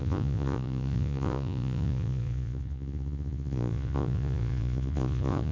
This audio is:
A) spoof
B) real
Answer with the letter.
A